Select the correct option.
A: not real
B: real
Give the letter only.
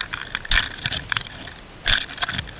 B